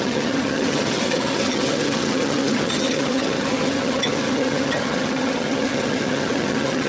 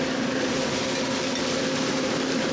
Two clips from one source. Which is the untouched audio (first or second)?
second